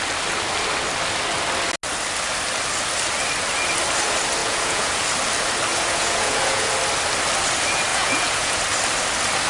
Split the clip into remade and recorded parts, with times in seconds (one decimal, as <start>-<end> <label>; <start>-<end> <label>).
0.0-4.4 recorded; 4.4-5.0 remade; 5.0-5.7 recorded; 5.7-6.7 remade; 6.7-7.9 recorded; 7.9-8.6 remade; 8.6-9.5 recorded